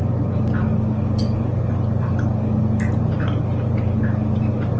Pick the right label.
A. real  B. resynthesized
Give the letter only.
A